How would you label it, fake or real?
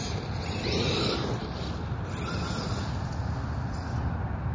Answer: real